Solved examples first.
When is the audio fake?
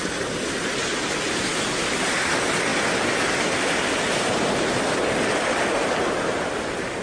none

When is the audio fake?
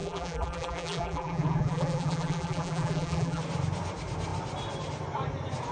0.0-3.4 (vocoder, BigVGAN v2)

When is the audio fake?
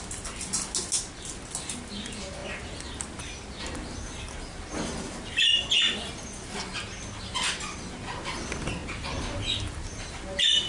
none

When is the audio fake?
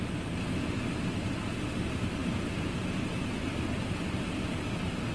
2.2-3.9 (vocoder, BigVGAN v2)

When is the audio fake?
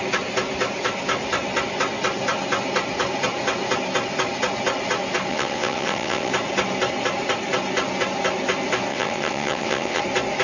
5.3-6.3 (vocoder, WaveNeXt); 8.9-10.0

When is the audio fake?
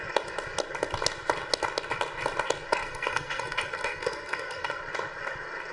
2.7-4.8 (codec, SNAC)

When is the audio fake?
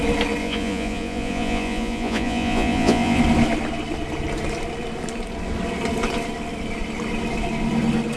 0.4-3.2 (vocoder, Vocos)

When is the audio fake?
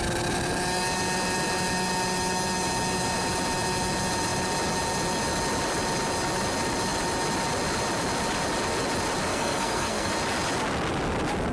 9.3-10.1 (codec, SNAC)